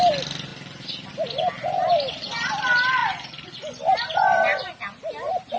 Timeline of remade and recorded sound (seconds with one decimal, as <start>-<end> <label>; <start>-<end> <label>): 0.0-0.5 remade; 0.5-1.1 recorded; 1.1-4.5 remade; 4.5-5.6 recorded